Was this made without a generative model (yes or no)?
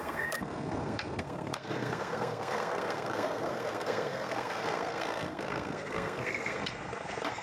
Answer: no